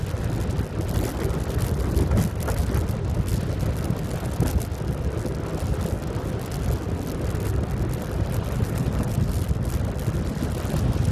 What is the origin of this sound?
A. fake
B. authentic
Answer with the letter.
B